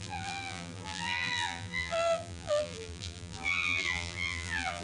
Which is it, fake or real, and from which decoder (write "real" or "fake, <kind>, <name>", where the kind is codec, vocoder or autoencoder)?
fake, vocoder, BigVGAN v2